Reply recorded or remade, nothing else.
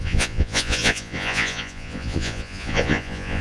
remade